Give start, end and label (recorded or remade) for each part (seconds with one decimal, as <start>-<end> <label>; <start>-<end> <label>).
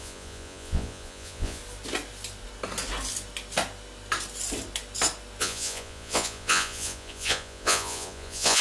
0.0-1.6 remade; 1.6-5.4 recorded; 5.4-8.6 remade